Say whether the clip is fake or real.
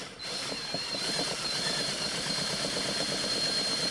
fake